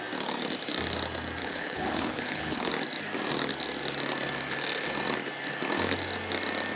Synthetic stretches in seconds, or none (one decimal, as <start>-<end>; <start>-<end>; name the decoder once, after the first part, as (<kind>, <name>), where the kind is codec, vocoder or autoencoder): 1.4-2.7 (codec, HILCodec)